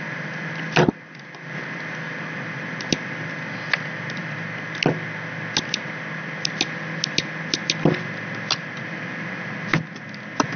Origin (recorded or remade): recorded